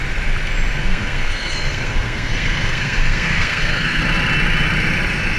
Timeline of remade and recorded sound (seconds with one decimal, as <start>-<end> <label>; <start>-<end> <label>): 0.0-0.8 recorded; 0.8-4.0 remade; 4.0-5.4 recorded